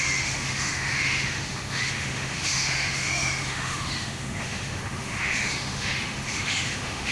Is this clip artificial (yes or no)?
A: yes